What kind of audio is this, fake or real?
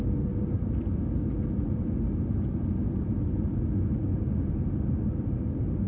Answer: real